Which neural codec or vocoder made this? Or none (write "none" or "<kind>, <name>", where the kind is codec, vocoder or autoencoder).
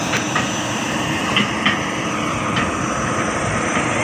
none